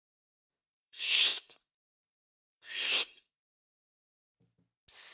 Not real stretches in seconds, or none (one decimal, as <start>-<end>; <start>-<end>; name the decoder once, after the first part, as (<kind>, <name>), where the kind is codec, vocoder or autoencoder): 0.0-3.8 (codec, SNAC)

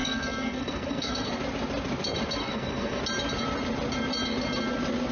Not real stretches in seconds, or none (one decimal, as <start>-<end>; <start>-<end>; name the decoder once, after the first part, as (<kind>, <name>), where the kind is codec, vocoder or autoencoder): 0.0-1.3 (codec, SNAC); 2.4-3.0

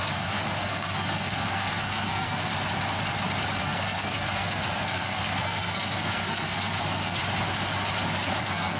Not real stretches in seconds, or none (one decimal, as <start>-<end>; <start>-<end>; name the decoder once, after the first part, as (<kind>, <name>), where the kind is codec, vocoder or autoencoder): 0.0-2.5 (codec, SNAC); 3.6-7.2; 8.4-8.8

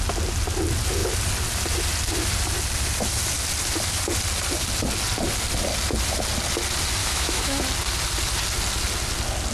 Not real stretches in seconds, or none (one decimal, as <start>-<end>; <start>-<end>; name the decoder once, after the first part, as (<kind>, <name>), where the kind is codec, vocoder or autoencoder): 7.0-7.6 (autoencoder, DAC-VAE)

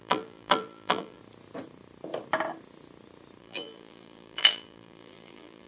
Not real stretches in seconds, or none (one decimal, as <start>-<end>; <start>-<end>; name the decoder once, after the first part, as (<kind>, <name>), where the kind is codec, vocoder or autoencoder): 0.0-1.2 (vocoder, BigVGAN v2); 3.4-5.7